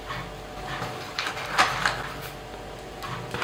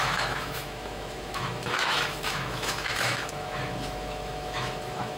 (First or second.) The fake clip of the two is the second